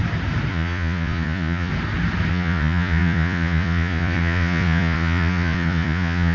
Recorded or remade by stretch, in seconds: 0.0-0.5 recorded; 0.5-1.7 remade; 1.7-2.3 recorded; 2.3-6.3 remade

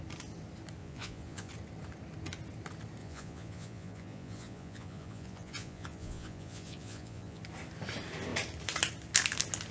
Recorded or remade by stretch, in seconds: 0.0-0.8 recorded; 0.8-1.5 remade; 1.5-3.0 recorded; 3.0-7.4 remade; 7.4-9.7 recorded

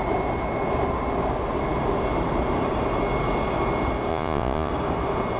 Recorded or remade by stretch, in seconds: 0.0-4.1 recorded; 4.1-4.7 remade; 4.7-5.4 recorded

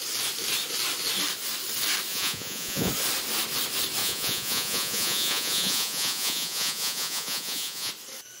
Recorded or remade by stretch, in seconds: 0.0-2.1 recorded; 2.1-2.9 remade; 2.9-4.0 recorded; 4.0-7.9 remade; 7.9-8.4 recorded

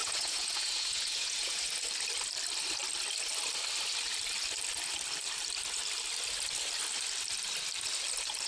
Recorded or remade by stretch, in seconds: 0.0-1.6 remade; 1.6-8.5 recorded

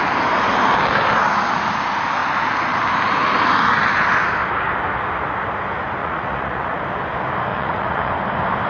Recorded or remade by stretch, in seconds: 0.0-6.0 recorded; 6.0-6.8 remade; 6.8-7.5 recorded; 7.5-8.1 remade; 8.1-8.7 recorded

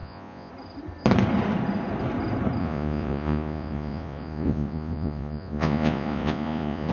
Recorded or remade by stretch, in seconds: 0.0-0.5 remade; 0.5-2.6 recorded; 2.6-6.9 remade